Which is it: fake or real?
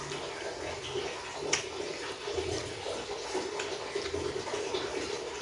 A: real